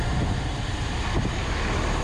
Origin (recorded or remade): recorded